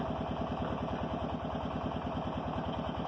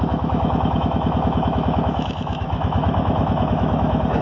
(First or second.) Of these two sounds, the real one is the first